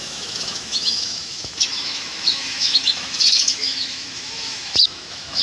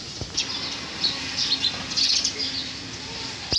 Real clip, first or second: second